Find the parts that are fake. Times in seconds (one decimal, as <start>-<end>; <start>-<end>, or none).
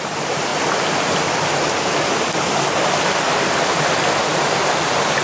none